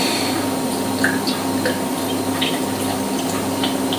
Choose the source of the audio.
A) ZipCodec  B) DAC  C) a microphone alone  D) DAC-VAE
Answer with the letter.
C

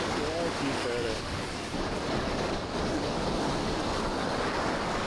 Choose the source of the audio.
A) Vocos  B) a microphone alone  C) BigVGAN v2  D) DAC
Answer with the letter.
D